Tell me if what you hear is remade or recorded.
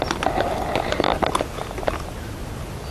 recorded